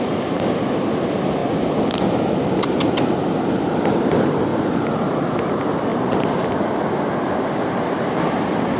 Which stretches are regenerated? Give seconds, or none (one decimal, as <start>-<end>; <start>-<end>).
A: none